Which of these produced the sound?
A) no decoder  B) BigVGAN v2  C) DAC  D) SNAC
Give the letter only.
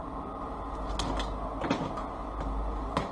A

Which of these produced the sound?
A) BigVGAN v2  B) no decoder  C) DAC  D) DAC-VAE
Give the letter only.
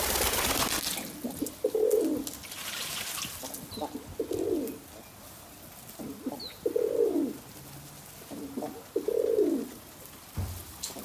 B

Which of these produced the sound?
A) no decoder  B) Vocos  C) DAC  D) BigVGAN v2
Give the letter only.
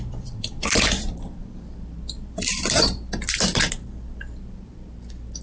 D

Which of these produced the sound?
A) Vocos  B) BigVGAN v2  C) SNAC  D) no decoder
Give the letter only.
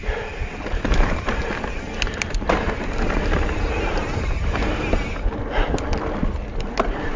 D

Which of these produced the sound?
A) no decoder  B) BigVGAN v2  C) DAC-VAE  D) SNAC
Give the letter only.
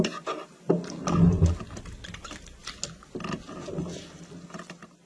A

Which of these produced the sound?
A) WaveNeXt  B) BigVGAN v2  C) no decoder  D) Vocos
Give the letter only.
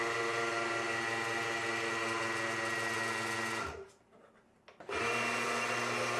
C